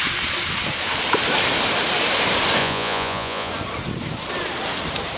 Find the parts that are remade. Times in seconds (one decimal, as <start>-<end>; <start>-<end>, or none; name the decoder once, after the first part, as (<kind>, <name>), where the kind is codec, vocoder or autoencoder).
2.6-3.5 (vocoder, Vocos)